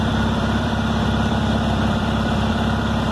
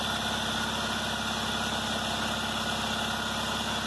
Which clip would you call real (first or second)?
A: second